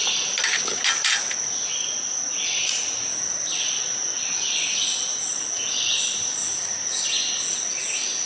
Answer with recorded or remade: recorded